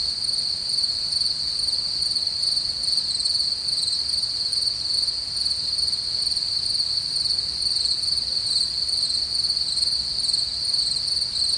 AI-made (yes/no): no